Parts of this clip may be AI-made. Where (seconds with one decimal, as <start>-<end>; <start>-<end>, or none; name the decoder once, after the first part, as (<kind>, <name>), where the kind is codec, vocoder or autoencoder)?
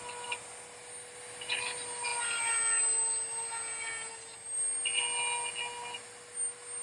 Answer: none